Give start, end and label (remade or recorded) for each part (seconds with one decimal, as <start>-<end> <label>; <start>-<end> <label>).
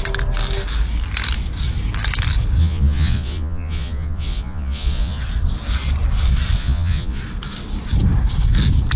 0.0-2.6 recorded; 2.6-5.2 remade; 5.2-6.6 recorded; 6.6-7.2 remade; 7.2-9.0 recorded